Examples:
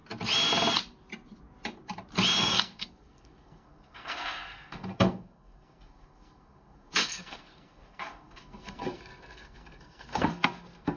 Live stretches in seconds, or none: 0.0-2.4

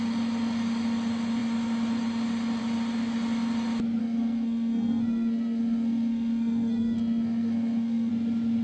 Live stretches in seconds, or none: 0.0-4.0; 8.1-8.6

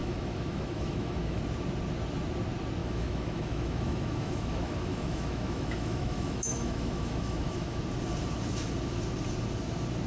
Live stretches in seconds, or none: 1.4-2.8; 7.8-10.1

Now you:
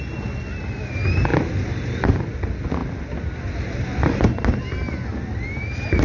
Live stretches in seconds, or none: 0.0-6.0